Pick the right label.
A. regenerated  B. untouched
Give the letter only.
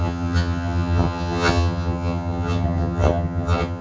A